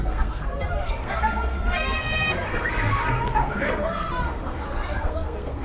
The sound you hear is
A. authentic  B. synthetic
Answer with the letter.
B